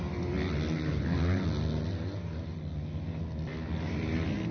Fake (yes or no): no